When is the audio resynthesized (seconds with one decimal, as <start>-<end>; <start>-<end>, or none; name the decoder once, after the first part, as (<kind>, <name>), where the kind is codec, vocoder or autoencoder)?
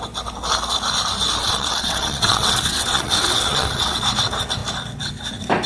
1.4-4.0 (vocoder, WaveNeXt)